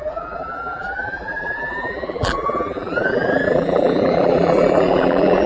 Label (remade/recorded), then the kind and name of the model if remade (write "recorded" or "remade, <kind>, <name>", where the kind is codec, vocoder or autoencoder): remade, vocoder, BigVGAN v2